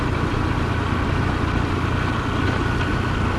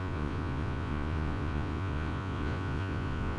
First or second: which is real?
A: first